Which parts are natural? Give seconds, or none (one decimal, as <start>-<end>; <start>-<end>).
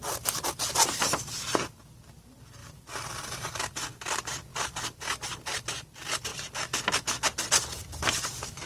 6.3-8.0